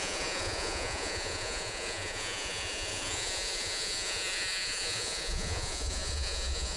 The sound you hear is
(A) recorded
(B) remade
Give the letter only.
B